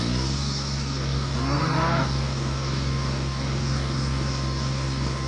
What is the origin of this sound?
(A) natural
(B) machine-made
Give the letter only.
B